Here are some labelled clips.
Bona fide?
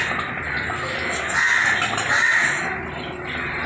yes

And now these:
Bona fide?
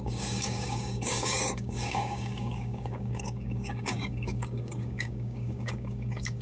no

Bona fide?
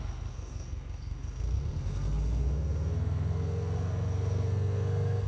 no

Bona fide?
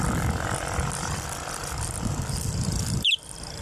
no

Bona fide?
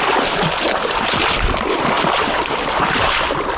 yes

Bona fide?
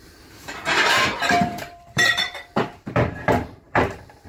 no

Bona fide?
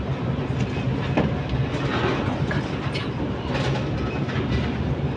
yes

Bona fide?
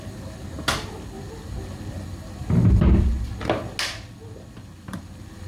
yes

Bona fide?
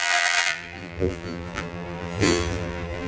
no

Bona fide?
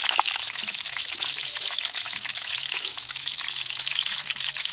no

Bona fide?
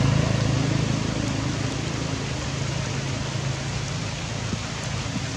yes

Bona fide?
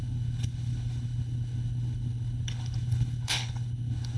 no